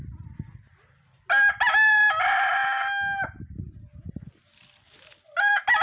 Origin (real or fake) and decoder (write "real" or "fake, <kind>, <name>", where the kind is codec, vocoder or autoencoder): real